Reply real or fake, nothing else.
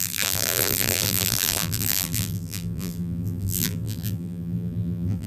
fake